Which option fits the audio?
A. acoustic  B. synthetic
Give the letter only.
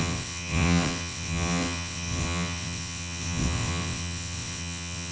B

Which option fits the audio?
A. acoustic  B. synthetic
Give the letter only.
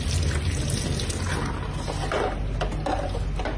A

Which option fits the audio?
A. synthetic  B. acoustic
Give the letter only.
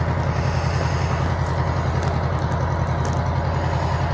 B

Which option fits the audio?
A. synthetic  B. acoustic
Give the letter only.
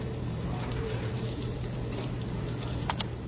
A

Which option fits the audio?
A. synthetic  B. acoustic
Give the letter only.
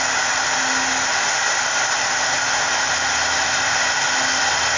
B